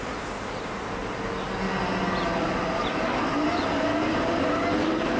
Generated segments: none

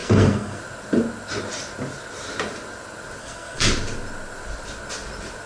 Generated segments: 0.0-0.6 (codec, SNAC); 3.2-3.7

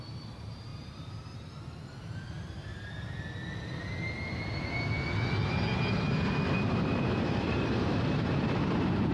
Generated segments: 0.0-2.7 (vocoder, BigVGAN v2); 7.1-9.1

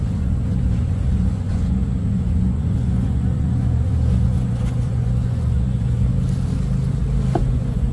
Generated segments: 0.0-6.1 (vocoder, Vocos); 7.4-7.9

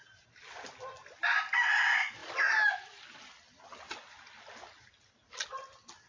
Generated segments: none

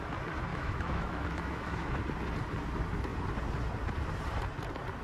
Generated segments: 0.5-2.0 (autoencoder, DAC-VAE)